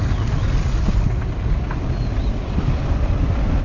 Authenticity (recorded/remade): recorded